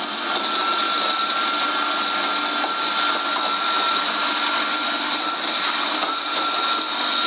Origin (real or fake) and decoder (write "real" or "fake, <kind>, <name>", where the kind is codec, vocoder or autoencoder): real